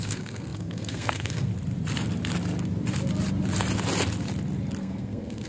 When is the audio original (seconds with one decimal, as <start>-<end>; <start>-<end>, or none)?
1.5-4.8